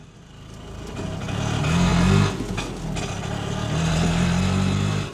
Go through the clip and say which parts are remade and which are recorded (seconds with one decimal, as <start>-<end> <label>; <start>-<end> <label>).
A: 0.0-5.1 recorded